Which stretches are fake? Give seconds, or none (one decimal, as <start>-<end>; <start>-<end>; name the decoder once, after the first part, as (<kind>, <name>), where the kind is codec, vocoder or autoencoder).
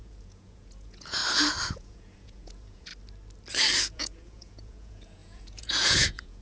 0.0-1.2 (vocoder, Vocos); 1.7-2.9; 3.8-6.4